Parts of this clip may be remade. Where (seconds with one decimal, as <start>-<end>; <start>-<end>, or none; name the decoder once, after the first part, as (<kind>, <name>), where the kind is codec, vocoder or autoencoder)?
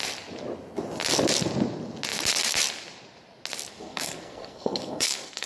3.7-5.5 (codec, SNAC)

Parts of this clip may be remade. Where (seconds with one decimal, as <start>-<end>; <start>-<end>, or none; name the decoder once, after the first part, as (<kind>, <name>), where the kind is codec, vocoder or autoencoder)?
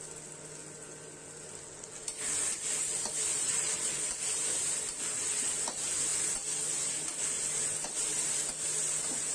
3.3-4.0 (vocoder, Vocos)